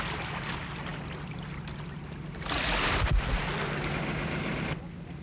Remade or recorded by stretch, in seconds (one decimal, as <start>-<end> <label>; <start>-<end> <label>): 0.0-5.2 recorded